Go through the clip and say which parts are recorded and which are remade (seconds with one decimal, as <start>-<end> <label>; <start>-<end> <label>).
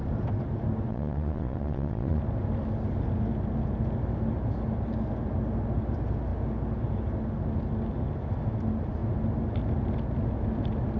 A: 0.0-0.9 recorded; 0.9-2.2 remade; 2.2-11.0 recorded